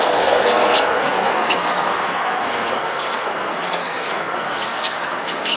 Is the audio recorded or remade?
remade